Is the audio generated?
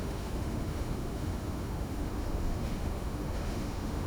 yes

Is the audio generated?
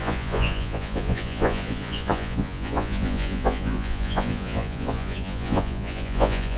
yes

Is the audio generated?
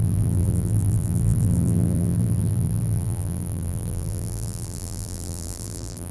yes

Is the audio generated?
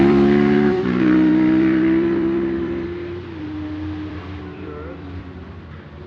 yes